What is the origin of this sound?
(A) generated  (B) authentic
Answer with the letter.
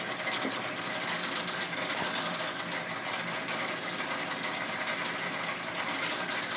B